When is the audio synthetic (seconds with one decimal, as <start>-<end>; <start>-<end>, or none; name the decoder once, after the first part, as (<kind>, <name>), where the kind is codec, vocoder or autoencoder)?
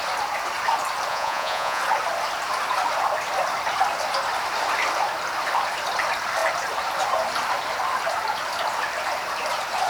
1.1-1.8 (vocoder, Vocos)